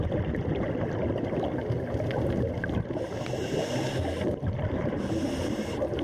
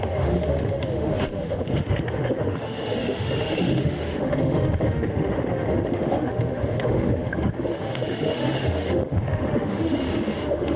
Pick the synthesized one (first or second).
second